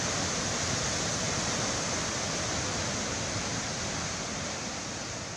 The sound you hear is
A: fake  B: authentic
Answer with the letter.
B